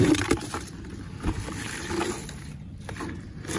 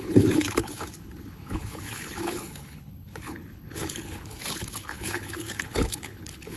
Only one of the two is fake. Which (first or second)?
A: second